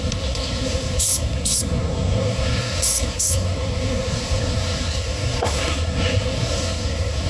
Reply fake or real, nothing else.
fake